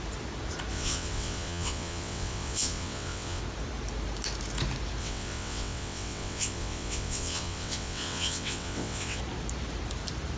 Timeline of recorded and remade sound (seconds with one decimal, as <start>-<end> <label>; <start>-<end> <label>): 0.0-0.7 recorded; 0.7-3.4 remade; 3.4-5.0 recorded; 5.0-9.2 remade; 9.2-10.4 recorded